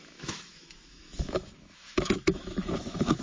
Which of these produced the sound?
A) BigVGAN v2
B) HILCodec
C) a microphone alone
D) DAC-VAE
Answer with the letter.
D